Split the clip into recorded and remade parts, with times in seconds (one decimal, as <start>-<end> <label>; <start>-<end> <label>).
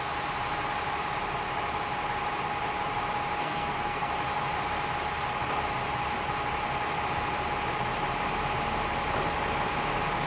0.0-3.4 recorded; 3.4-4.1 remade; 4.1-10.3 recorded